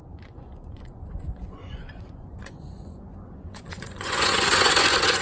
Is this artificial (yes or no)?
yes